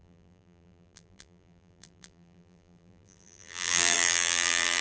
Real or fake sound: fake